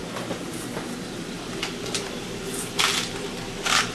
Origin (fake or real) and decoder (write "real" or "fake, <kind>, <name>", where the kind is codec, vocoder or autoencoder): fake, vocoder, BigVGAN v2